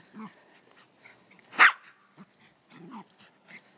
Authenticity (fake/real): real